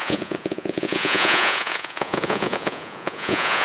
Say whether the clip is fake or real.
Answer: fake